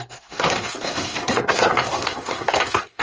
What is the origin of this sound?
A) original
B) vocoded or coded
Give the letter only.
B